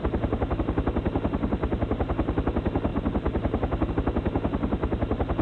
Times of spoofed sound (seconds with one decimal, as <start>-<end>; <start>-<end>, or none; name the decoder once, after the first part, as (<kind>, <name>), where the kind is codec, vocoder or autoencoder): none